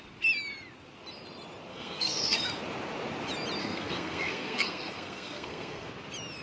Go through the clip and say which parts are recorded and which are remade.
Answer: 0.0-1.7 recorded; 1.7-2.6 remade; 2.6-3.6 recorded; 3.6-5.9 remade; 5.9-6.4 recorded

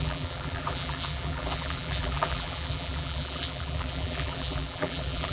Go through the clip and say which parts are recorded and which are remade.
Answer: 0.0-5.3 remade

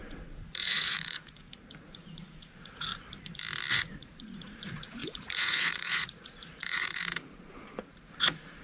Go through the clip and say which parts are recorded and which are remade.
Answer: 0.0-2.9 remade; 2.9-3.7 recorded; 3.7-8.6 remade